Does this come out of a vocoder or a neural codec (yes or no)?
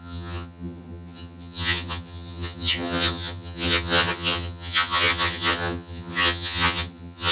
yes